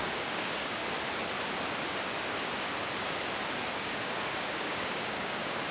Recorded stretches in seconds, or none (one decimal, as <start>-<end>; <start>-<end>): 0.8-3.7